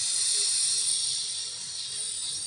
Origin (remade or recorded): remade